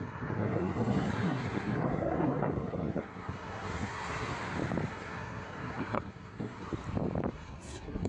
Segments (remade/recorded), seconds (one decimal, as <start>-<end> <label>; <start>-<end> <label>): 0.0-4.3 remade; 4.3-4.9 recorded; 4.9-6.7 remade; 6.7-7.3 recorded; 7.3-8.1 remade